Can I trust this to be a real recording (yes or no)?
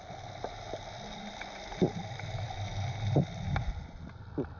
yes